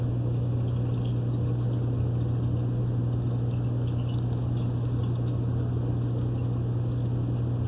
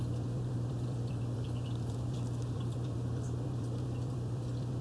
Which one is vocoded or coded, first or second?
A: second